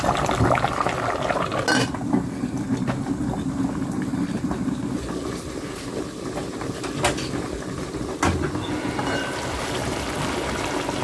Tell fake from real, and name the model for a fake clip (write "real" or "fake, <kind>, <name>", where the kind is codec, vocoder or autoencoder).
real